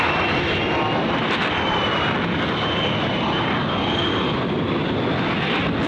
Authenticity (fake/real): real